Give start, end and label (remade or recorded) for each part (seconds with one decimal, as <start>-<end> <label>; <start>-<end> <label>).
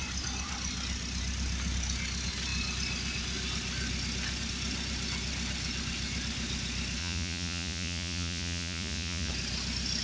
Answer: 0.0-7.0 recorded; 7.0-9.3 remade; 9.3-10.0 recorded